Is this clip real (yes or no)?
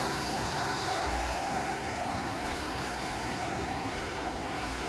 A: no